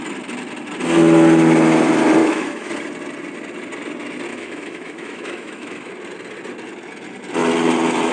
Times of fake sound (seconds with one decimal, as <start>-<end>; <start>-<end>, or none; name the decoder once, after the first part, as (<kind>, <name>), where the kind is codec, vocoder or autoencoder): 2.2-2.7 (autoencoder, DAC-VAE); 4.3-5.9